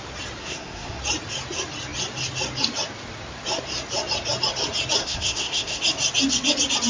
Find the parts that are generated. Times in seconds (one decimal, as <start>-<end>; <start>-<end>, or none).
0.4-1.0; 5.0-5.8